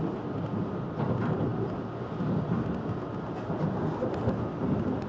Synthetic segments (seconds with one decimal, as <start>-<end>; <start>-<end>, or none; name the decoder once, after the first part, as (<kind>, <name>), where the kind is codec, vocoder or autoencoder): none